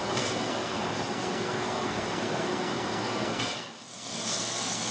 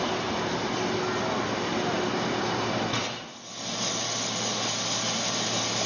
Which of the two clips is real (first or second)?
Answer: second